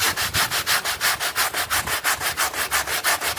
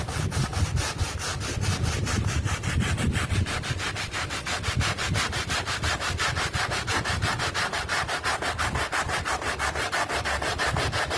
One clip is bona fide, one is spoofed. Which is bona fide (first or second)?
first